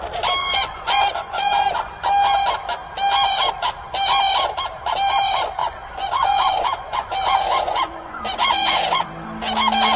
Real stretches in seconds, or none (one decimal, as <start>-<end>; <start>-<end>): 0.0-0.4; 1.9-5.6; 9.1-10.0